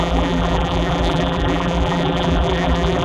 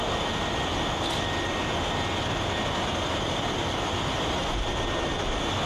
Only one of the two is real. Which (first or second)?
second